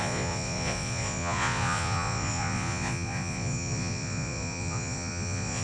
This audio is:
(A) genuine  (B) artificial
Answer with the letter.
B